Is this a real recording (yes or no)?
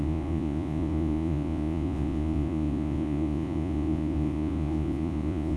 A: no